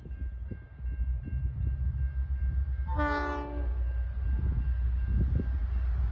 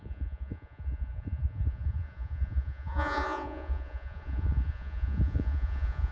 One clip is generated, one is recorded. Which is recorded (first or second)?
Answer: first